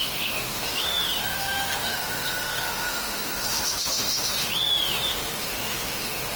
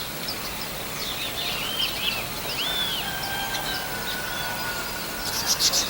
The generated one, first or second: first